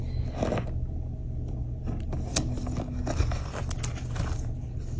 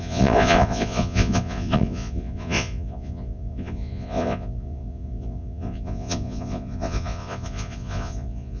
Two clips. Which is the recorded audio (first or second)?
first